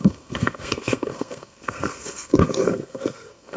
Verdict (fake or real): fake